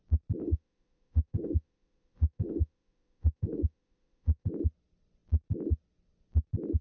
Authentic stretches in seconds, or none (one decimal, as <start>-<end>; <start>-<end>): 0.0-0.4; 4.5-6.8